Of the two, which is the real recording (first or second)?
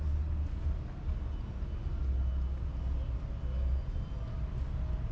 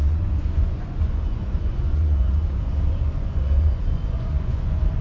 first